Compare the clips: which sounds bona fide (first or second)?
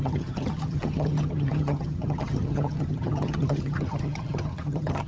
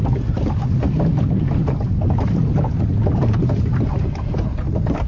second